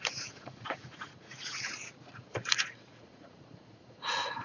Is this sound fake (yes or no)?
yes